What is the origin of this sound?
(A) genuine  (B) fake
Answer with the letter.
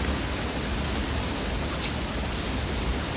A